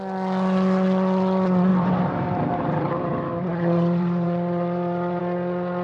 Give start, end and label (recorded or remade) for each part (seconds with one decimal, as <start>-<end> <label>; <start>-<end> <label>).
0.0-1.7 recorded; 1.7-5.2 remade; 5.2-5.8 recorded